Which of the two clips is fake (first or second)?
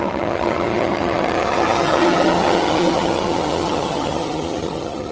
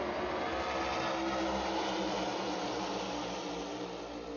first